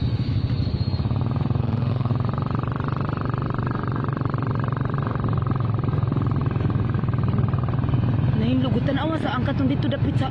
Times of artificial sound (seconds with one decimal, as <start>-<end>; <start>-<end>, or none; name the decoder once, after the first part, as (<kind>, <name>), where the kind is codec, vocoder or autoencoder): 1.6-2.1 (autoencoder, DAC-VAE)